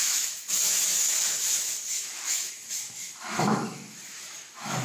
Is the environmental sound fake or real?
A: fake